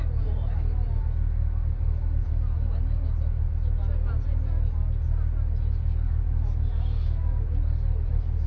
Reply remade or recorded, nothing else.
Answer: recorded